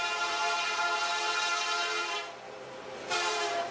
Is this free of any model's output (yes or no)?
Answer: yes